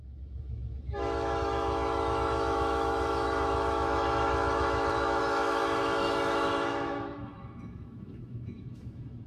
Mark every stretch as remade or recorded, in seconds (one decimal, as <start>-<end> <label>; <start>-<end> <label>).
0.0-9.3 remade